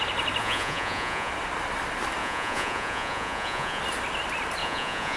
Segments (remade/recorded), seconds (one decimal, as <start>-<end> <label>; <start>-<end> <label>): 0.0-0.4 recorded; 0.4-1.3 remade; 1.3-2.2 recorded; 2.2-3.8 remade; 3.8-4.6 recorded; 4.6-5.2 remade